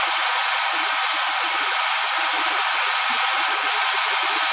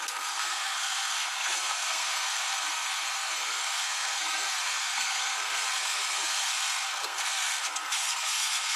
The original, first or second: first